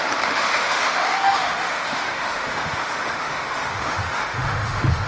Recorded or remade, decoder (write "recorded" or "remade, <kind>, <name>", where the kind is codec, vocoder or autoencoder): remade, autoencoder, DAC-VAE